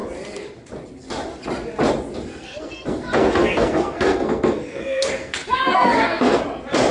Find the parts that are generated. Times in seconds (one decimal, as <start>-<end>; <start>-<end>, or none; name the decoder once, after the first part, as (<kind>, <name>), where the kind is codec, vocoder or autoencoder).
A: 2.3-6.4 (codec, SNAC)